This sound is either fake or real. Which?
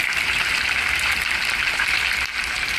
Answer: fake